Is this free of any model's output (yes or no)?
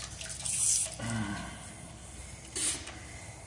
yes